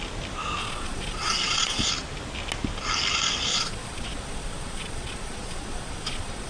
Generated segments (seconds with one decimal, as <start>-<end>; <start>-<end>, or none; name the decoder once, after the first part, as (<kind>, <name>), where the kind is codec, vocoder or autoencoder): 0.6-1.9 (vocoder, Vocos); 3.5-6.5